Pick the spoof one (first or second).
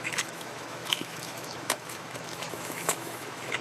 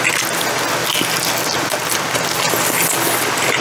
first